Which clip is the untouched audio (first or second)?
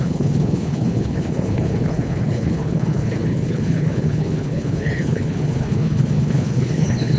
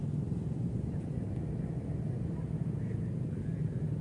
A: second